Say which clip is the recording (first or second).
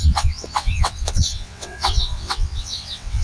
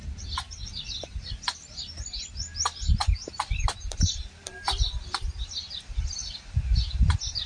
second